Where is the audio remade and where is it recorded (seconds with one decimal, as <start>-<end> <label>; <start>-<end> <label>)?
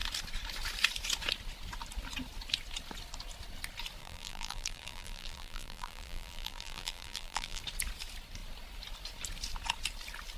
0.0-4.0 recorded; 4.0-7.6 remade; 7.6-10.4 recorded